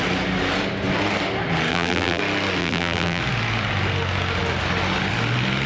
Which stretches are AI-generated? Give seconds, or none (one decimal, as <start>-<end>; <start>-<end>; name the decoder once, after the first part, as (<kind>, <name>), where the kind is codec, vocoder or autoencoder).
1.7-2.2 (vocoder, BigVGAN v2); 2.6-3.2